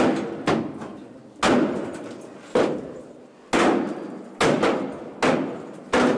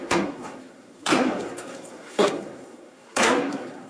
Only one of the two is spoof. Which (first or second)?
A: second